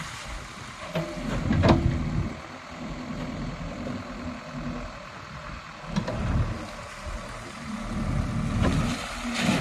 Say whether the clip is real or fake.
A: real